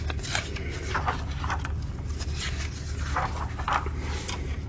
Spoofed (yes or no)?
no